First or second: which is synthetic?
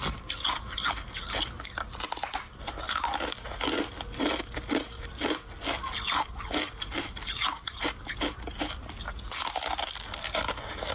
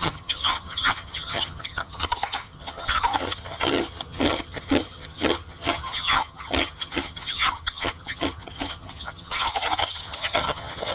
second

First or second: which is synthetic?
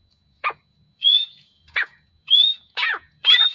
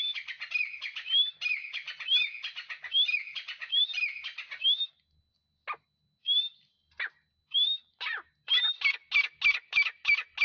first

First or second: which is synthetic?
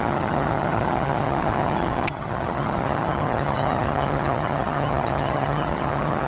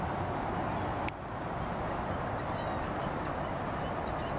first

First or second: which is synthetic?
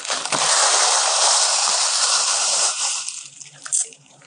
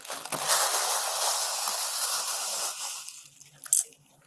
first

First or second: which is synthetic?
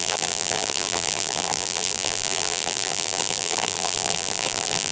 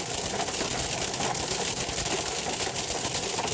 first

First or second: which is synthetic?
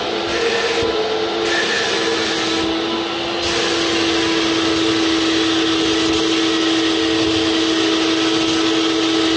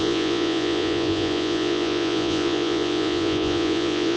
second